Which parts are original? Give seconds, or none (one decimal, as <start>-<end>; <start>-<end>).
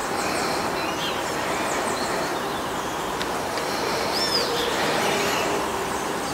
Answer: 0.0-1.6